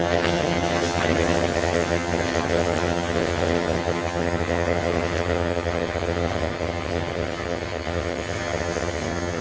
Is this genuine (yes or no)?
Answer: no